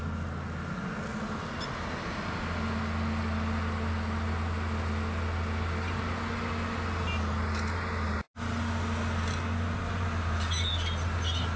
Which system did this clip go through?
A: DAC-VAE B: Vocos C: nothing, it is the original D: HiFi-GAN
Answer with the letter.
C